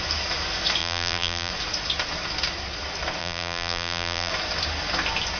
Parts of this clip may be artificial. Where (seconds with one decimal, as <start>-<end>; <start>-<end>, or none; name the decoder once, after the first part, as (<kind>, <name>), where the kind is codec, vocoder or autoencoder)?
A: 0.8-1.5 (vocoder, BigVGAN v2); 3.2-4.3